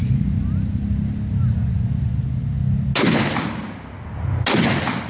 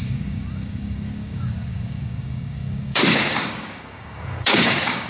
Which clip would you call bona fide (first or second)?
first